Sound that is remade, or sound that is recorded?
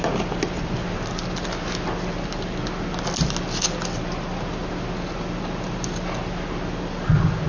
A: recorded